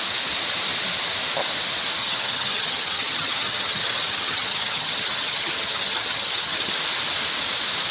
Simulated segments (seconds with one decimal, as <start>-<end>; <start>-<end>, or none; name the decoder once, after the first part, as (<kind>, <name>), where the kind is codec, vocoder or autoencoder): 2.0-6.7 (vocoder, HiFi-GAN)